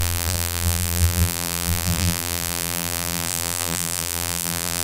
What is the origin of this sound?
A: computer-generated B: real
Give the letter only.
A